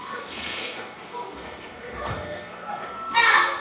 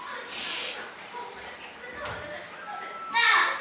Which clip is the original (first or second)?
second